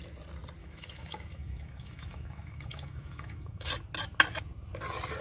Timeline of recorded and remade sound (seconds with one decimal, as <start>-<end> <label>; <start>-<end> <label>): 0.0-0.6 recorded; 0.6-3.7 remade; 3.7-5.2 recorded